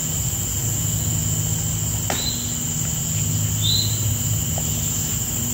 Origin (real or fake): real